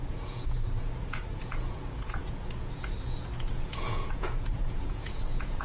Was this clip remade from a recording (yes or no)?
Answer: yes